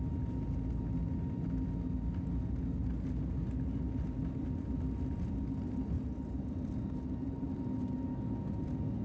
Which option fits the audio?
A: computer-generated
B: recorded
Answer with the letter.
B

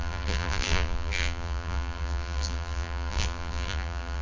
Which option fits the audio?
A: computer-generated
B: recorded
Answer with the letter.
A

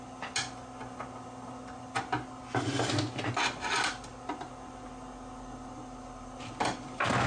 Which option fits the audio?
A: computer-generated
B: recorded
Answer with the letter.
B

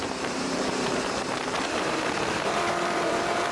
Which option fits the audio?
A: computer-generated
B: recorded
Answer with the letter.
A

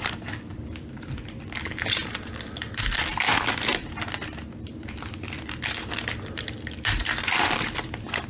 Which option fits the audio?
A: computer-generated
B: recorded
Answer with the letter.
A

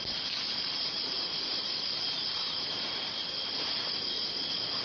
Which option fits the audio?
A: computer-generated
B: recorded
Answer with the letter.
A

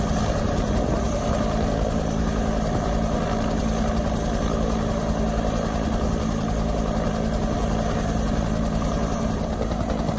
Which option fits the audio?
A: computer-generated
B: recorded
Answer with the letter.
B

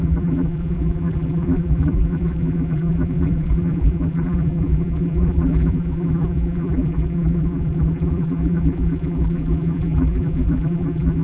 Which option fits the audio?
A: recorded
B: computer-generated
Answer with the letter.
B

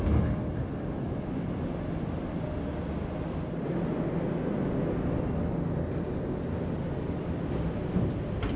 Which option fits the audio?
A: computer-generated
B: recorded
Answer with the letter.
B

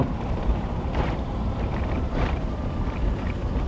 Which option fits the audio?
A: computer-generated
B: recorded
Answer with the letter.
A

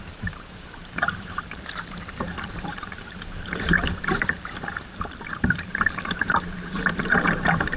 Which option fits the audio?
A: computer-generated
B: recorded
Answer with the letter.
A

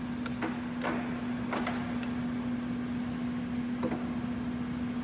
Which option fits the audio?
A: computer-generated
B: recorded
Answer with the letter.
B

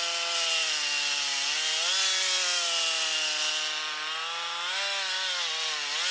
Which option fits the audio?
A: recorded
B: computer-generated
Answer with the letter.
A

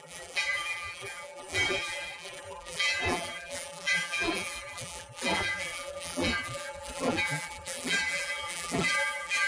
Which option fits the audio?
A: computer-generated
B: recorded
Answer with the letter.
A